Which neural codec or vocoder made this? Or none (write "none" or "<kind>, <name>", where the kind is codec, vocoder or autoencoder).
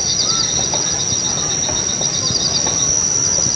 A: none